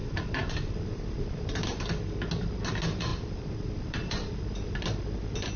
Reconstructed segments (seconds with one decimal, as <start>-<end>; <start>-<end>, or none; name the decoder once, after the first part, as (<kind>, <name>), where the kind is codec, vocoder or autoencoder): 0.0-1.8 (vocoder, BigVGAN v2); 3.1-4.3